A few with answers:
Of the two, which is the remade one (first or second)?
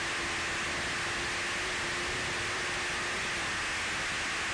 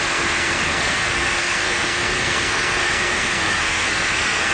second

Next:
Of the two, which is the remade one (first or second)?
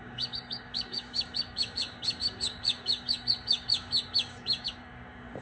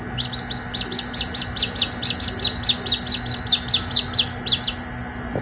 first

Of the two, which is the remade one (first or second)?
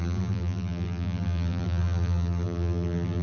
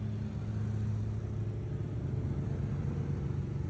first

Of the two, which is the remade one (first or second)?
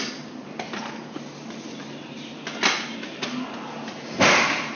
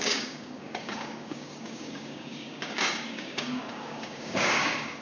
second